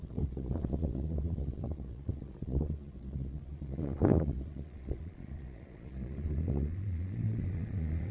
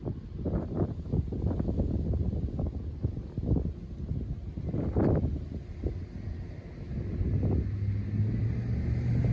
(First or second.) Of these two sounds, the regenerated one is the first